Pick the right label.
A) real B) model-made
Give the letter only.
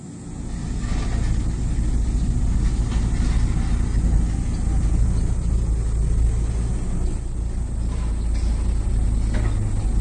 A